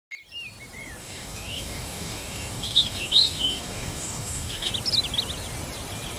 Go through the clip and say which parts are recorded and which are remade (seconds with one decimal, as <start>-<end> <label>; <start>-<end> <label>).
0.0-1.0 recorded; 1.0-4.7 remade; 4.7-6.2 recorded